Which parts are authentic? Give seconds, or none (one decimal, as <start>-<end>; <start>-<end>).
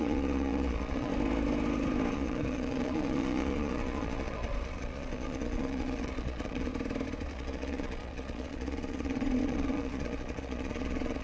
1.1-2.1; 6.7-7.3